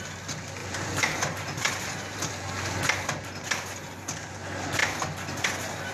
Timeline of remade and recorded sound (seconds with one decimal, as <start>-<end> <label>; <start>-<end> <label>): 0.0-0.6 recorded; 0.6-2.3 remade; 2.3-5.9 recorded